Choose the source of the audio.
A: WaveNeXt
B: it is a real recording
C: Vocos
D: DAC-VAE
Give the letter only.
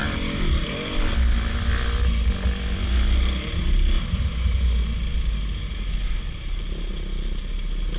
B